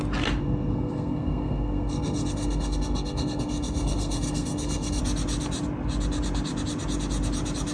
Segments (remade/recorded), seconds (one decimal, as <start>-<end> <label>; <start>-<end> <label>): 0.0-0.4 recorded; 0.4-5.0 remade; 5.0-7.7 recorded